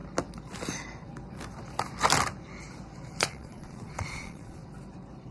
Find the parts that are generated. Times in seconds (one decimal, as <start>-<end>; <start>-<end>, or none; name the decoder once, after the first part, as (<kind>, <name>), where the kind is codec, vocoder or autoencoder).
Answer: 3.2-4.6 (vocoder, Vocos)